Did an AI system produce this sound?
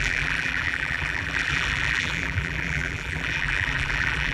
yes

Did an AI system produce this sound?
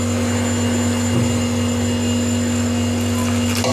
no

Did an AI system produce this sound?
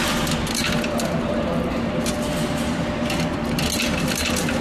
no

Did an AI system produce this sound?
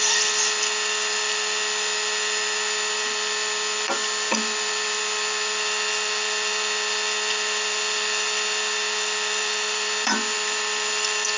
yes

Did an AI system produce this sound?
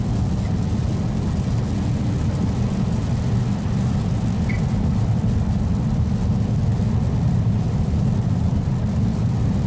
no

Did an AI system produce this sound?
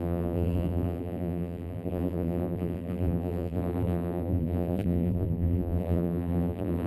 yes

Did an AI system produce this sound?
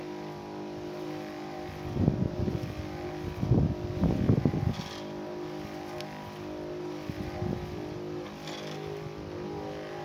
yes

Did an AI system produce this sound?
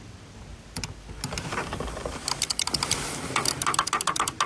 no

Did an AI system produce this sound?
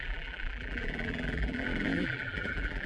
yes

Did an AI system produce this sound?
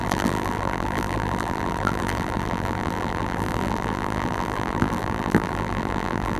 yes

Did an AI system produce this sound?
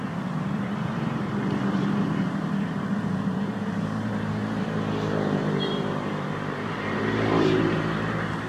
yes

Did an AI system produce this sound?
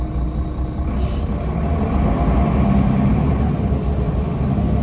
no